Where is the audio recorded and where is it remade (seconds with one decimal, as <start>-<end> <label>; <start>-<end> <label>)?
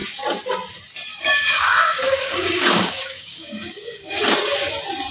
0.0-1.1 recorded; 1.1-4.2 remade; 4.2-5.1 recorded